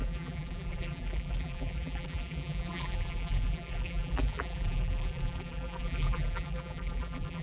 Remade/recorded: remade